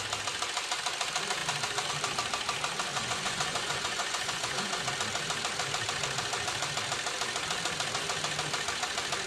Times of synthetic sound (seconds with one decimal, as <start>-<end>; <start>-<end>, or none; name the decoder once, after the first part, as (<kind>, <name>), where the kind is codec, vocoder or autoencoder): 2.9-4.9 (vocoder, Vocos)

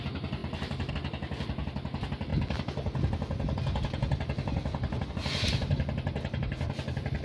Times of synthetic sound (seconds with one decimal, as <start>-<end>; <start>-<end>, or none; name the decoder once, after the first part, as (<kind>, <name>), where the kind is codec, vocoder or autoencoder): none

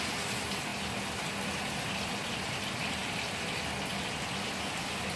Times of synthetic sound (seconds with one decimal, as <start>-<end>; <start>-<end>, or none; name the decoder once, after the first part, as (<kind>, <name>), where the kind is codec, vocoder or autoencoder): none